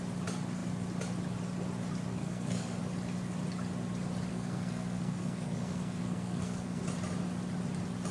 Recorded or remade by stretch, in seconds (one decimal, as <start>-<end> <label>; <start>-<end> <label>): 0.0-2.2 recorded; 2.2-2.8 remade; 2.8-4.3 recorded; 4.3-6.8 remade; 6.8-8.1 recorded